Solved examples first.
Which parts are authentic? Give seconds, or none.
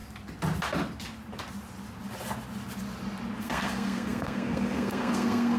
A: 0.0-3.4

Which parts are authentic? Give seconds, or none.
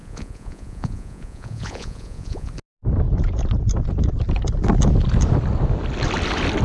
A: 2.5-6.6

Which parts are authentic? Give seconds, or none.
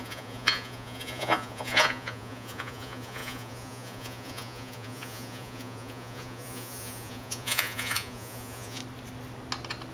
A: 8.8-9.9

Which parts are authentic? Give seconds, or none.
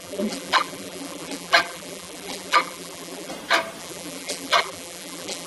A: 3.3-3.8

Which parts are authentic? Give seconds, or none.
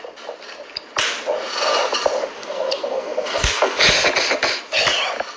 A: 0.0-2.4; 3.8-5.4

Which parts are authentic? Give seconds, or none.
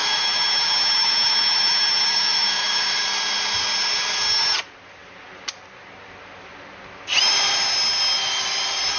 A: 3.0-9.0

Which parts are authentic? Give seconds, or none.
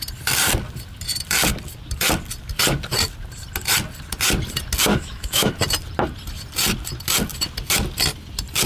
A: 0.0-4.9; 5.5-8.7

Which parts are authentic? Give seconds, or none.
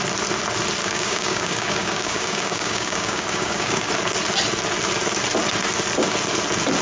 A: 0.0-0.8; 3.9-6.8